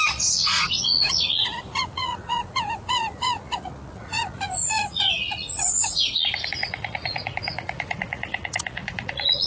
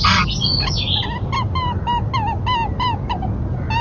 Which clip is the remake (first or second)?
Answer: first